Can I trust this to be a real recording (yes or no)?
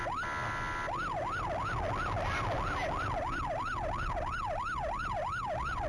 yes